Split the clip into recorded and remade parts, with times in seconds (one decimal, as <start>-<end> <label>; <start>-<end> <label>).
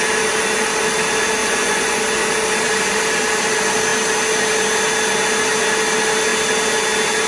0.0-1.4 recorded; 1.4-2.0 remade; 2.0-7.3 recorded